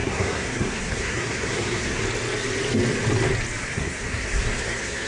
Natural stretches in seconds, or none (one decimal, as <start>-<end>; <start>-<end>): 2.0-3.6